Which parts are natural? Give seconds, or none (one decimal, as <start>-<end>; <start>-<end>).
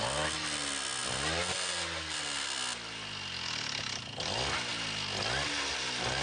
0.0-6.2